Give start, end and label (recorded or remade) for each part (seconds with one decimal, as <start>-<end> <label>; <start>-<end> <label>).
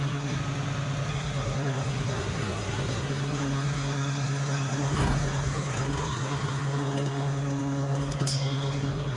0.0-0.4 remade; 0.4-1.1 recorded; 1.1-9.2 remade